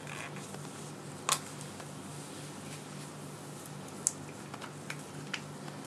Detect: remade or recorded recorded